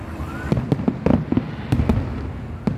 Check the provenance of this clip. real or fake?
real